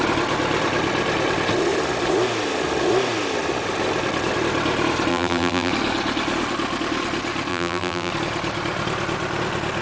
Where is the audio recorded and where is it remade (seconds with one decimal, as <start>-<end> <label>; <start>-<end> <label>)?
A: 0.0-5.1 recorded; 5.1-5.7 remade; 5.7-7.5 recorded; 7.5-8.1 remade; 8.1-9.8 recorded